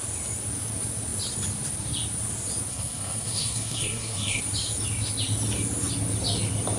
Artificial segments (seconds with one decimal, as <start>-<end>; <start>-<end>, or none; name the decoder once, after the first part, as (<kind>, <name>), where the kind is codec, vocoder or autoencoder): 2.7-4.4 (codec, SNAC)